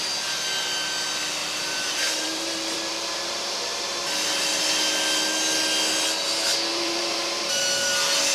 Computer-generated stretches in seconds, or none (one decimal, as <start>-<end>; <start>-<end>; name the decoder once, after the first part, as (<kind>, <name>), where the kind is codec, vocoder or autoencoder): 1.4-4.0 (vocoder, BigVGAN v2); 6.7-7.6